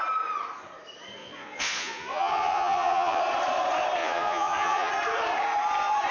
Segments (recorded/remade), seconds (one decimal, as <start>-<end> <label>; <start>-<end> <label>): 0.0-1.2 recorded; 1.2-3.2 remade; 3.2-4.0 recorded; 4.0-4.9 remade; 4.9-6.1 recorded